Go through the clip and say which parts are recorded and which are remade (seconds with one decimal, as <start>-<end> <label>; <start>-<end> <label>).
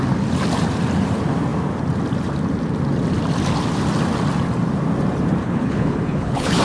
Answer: 0.0-5.4 recorded; 5.4-6.6 remade